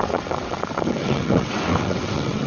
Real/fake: fake